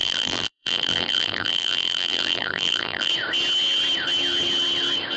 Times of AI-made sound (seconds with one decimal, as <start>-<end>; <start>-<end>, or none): 0.0-3.1